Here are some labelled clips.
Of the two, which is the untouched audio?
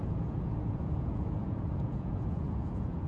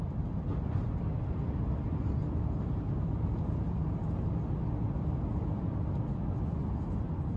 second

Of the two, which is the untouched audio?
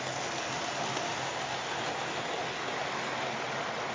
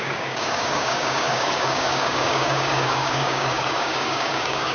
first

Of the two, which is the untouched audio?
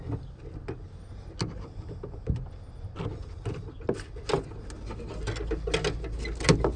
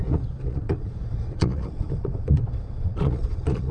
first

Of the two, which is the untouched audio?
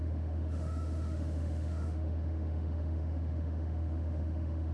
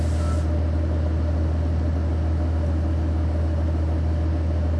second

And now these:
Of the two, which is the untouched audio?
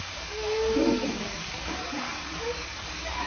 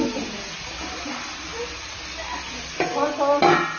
second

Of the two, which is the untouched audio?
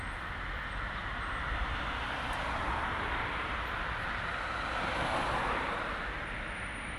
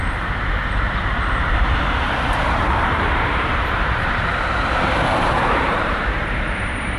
first